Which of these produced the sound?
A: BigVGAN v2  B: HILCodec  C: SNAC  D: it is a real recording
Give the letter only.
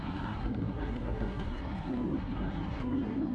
C